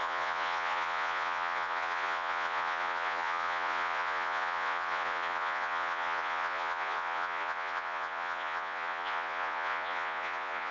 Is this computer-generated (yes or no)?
yes